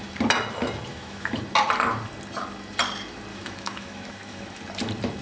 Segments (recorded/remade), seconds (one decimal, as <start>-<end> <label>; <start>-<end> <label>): 0.0-0.9 recorded; 0.9-1.4 remade; 1.4-3.3 recorded; 3.3-4.6 remade; 4.6-5.2 recorded